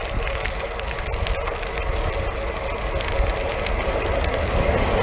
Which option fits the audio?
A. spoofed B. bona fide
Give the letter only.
B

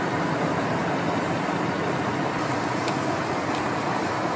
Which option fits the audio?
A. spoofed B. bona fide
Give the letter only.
B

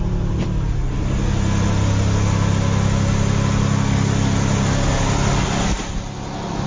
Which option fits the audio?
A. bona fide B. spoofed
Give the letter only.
A